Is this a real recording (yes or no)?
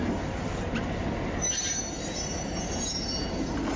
yes